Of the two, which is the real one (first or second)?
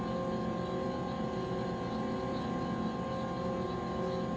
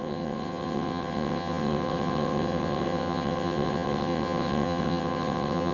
first